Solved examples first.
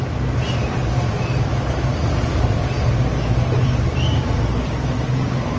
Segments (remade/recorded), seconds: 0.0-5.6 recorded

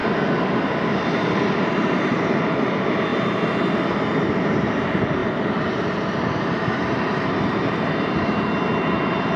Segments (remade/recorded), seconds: 0.0-0.9 recorded; 0.9-9.4 remade